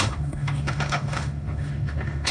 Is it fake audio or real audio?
fake